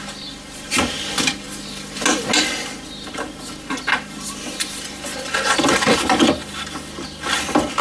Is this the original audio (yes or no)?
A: yes